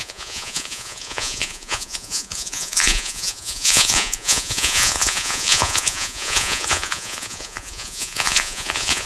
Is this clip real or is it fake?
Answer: fake